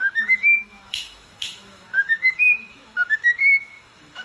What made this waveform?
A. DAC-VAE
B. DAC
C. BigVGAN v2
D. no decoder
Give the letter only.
A